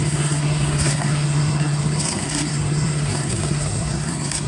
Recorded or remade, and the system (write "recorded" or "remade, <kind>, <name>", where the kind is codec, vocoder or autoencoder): remade, codec, SNAC